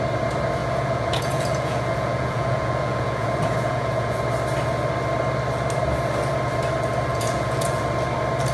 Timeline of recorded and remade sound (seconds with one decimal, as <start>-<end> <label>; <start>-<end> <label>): 0.0-0.6 recorded; 0.6-4.2 remade; 4.2-7.1 recorded; 7.1-7.8 remade; 7.8-8.5 recorded